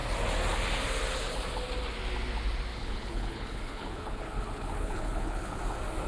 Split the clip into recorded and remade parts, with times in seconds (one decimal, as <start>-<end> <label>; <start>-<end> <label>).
0.0-2.7 recorded; 2.7-5.6 remade; 5.6-6.1 recorded